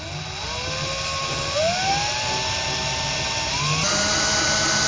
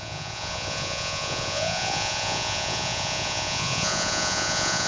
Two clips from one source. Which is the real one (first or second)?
first